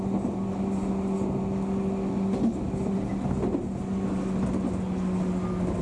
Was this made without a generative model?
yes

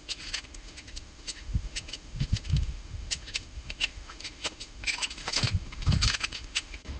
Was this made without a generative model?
no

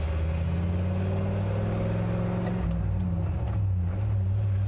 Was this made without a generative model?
yes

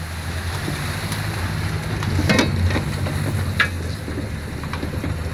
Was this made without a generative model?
yes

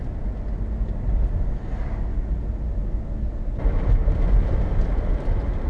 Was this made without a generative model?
yes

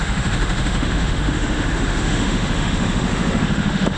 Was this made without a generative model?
no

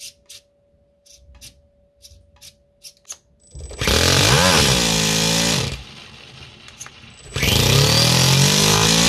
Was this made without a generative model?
yes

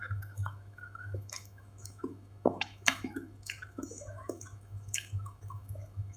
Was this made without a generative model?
no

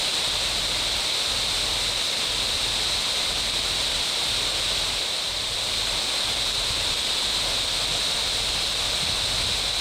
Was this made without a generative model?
yes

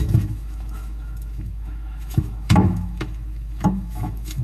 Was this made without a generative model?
no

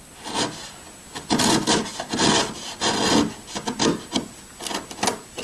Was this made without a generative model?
yes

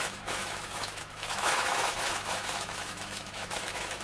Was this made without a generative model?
no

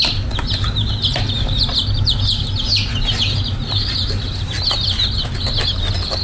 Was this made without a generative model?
yes